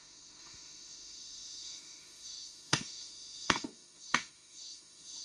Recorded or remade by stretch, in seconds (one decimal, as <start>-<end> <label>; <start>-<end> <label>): 0.0-5.2 remade